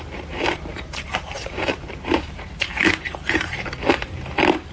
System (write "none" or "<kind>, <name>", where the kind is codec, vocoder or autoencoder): vocoder, BigVGAN v2